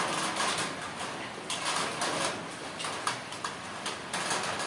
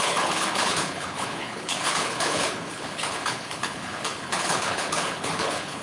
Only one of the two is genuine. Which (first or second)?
first